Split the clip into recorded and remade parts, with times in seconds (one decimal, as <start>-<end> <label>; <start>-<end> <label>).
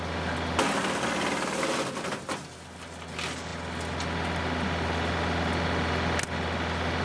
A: 0.0-7.0 recorded